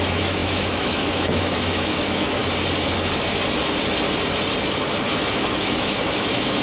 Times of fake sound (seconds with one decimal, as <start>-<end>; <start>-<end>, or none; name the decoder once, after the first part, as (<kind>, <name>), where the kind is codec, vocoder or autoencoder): 0.0-2.4 (autoencoder, DAC-VAE); 5.3-6.6